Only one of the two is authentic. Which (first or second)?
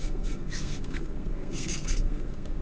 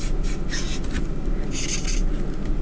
second